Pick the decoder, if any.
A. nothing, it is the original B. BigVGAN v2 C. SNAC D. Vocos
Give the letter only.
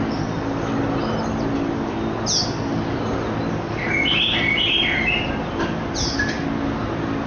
A